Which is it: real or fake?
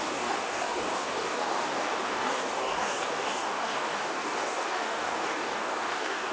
fake